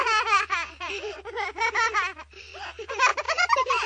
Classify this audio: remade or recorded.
remade